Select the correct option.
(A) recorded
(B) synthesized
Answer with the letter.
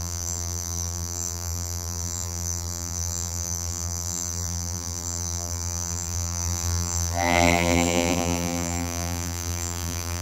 B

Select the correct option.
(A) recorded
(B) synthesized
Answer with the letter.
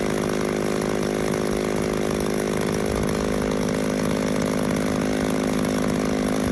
A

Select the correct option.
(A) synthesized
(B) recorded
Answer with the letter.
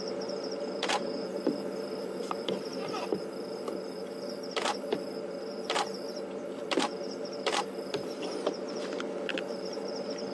A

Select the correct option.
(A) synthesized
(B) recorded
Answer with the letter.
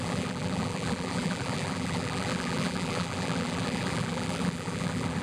A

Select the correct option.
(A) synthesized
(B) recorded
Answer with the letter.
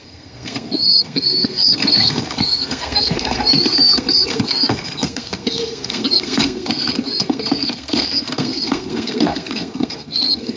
A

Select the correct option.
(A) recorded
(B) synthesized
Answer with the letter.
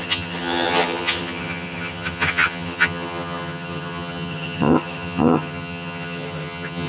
B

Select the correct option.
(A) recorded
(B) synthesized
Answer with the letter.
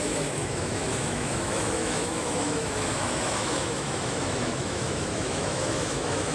B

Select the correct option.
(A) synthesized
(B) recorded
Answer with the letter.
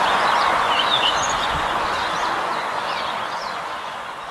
A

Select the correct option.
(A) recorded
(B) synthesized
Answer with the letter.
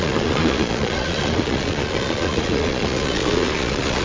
B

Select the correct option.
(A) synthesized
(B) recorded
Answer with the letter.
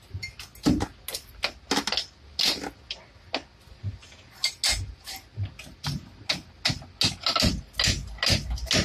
B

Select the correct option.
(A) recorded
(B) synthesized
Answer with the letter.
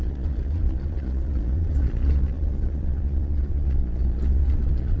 B